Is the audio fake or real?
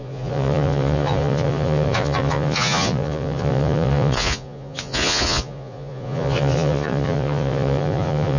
fake